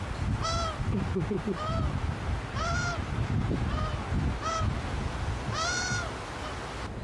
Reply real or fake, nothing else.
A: real